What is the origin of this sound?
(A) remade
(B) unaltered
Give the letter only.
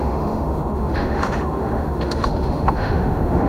A